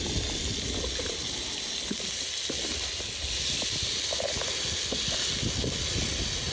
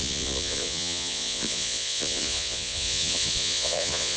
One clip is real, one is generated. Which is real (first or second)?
first